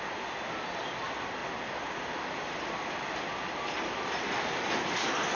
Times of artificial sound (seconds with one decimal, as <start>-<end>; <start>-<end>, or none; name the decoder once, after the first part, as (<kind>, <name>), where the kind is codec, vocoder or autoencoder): none